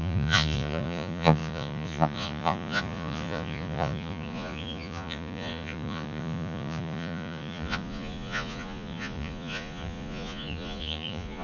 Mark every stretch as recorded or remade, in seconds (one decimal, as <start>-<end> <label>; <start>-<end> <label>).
0.0-11.4 remade